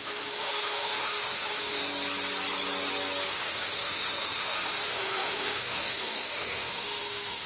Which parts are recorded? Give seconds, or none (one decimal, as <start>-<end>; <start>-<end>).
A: 1.8-3.3